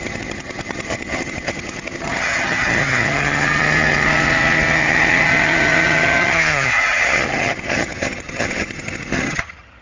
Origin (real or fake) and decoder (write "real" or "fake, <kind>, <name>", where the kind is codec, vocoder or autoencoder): fake, vocoder, HiFi-GAN